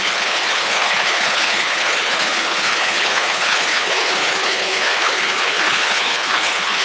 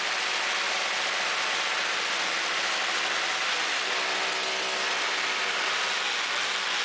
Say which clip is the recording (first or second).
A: second